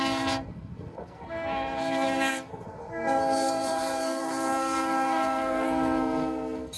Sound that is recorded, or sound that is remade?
remade